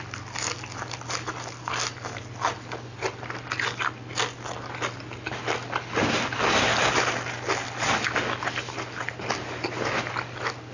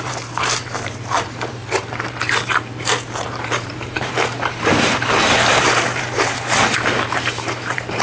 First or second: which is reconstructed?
second